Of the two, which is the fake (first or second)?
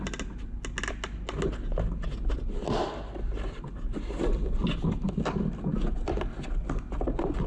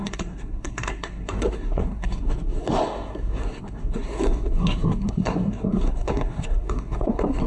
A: second